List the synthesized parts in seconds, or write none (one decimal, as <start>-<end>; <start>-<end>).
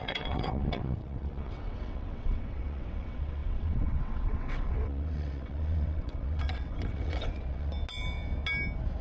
0.0-7.7